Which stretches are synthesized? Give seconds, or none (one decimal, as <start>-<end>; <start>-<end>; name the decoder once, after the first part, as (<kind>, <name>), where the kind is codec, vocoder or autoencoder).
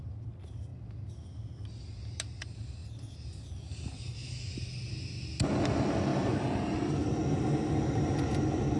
none